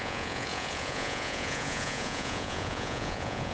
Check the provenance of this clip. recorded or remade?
remade